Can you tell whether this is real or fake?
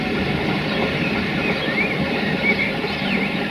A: fake